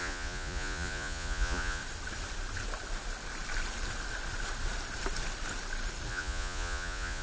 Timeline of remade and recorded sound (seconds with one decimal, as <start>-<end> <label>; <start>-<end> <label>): 0.0-1.8 remade; 1.8-6.1 recorded; 6.1-7.2 remade